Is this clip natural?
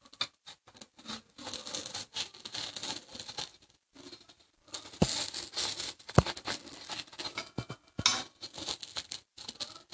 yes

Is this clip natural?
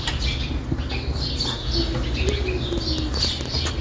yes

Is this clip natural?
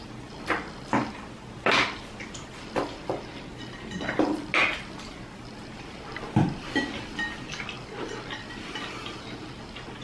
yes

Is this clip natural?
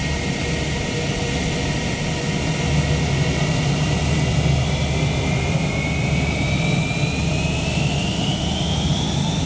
yes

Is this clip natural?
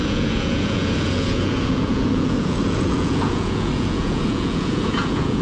no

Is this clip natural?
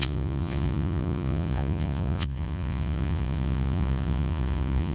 no